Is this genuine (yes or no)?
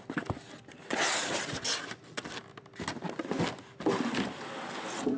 yes